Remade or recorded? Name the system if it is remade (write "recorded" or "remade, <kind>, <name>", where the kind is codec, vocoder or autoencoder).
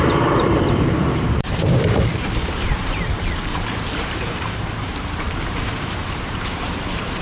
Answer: remade, vocoder, BigVGAN v2